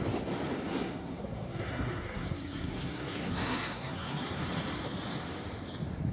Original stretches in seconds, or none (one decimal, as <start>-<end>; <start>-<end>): 0.0-0.7; 4.4-6.1